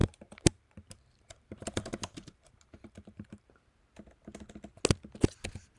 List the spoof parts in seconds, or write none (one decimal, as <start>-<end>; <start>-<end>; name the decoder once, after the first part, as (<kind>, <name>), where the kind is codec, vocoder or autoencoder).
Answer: 0.0-3.5 (vocoder, BigVGAN v2)